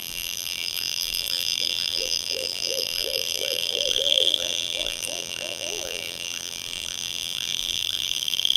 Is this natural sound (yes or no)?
no